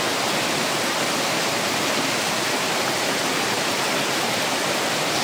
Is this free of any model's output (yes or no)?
yes